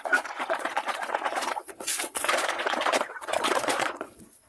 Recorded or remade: remade